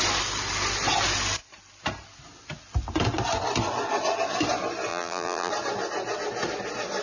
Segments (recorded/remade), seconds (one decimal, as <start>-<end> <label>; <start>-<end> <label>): 0.0-4.9 recorded; 4.9-5.5 remade; 5.5-7.0 recorded